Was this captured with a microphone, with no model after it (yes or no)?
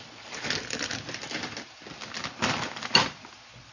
yes